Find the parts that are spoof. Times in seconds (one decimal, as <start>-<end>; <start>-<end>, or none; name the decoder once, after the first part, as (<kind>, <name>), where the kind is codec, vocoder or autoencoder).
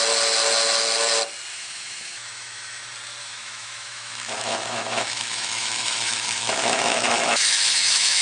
1.5-2.8 (autoencoder, DAC-VAE); 3.2-8.2